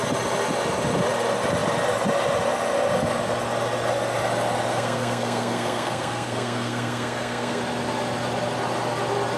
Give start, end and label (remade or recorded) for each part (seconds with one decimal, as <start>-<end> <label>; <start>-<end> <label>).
0.0-4.7 recorded; 4.7-7.6 remade; 7.6-9.4 recorded